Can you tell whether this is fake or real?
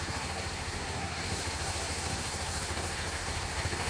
fake